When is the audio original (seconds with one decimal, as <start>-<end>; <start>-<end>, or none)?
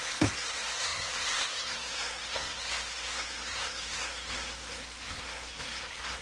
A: none